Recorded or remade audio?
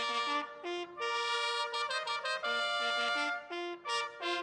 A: recorded